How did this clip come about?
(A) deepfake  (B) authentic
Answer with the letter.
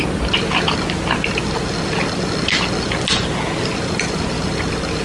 B